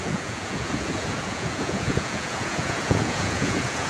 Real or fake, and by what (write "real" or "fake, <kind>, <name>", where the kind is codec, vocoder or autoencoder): fake, vocoder, Vocos